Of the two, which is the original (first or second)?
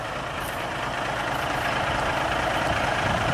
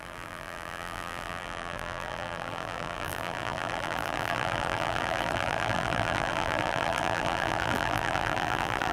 first